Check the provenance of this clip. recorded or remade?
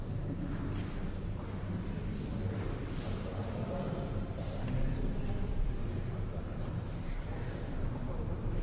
remade